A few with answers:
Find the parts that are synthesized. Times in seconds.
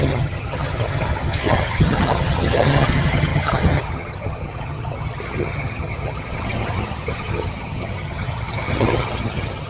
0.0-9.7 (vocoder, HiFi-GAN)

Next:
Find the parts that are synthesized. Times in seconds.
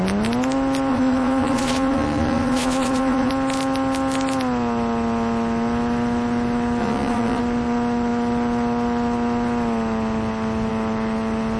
0.9-3.3 (vocoder, Vocos); 6.8-7.4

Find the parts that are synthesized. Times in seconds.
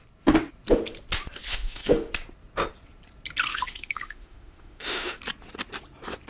1.5-2.1 (autoencoder, DAC-VAE); 3.5-5.2